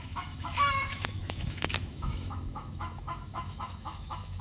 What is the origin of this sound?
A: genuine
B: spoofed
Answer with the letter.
B